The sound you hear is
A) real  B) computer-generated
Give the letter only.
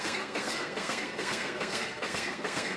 B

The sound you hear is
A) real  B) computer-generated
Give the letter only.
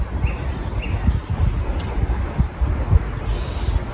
A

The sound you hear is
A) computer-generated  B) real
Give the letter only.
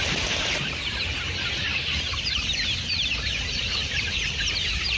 A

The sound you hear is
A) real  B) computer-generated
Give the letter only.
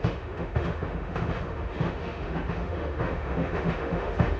B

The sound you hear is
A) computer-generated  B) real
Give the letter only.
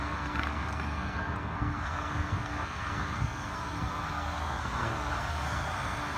A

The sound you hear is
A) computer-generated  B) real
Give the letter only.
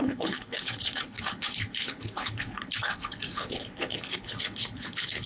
A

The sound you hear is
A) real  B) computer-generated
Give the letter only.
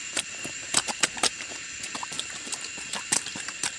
B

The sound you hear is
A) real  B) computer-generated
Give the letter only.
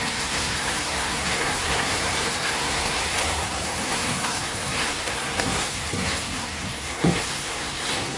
B